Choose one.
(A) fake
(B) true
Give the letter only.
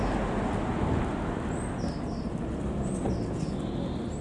B